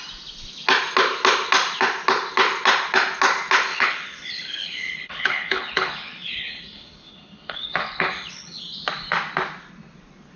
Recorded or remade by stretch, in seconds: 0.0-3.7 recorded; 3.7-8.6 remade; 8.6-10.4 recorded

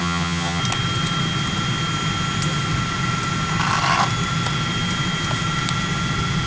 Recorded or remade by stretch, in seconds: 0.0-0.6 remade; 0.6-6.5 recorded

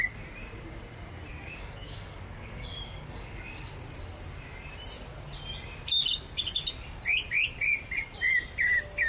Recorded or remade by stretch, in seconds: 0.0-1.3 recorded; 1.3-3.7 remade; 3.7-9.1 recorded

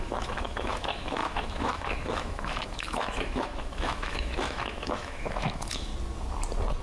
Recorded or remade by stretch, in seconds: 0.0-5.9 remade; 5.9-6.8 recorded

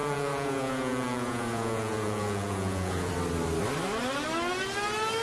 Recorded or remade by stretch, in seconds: 0.0-3.1 remade; 3.1-5.2 recorded

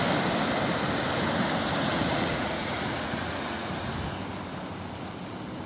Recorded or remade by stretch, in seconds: 0.0-1.9 recorded; 1.9-3.7 remade; 3.7-5.7 recorded